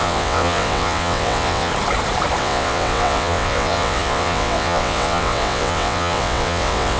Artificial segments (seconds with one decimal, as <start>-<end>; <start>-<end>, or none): 0.0-1.7; 2.4-7.0

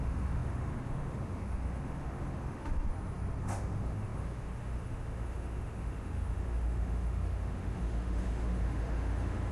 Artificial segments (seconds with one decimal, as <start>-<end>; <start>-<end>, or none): 0.0-2.9; 3.4-9.5

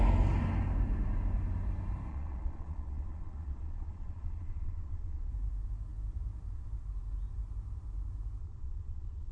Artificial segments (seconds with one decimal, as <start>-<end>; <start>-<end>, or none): 2.1-5.3; 8.4-9.3

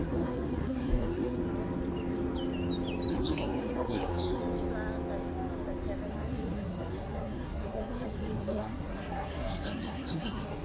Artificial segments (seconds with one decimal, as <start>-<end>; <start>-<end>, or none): 0.0-1.4; 3.1-4.4; 6.1-10.6

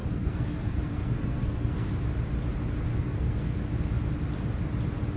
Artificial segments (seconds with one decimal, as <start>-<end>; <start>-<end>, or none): 0.0-1.9; 2.9-3.6

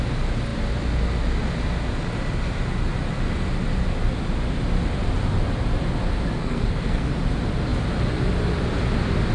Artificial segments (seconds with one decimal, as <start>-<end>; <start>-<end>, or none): 6.4-7.1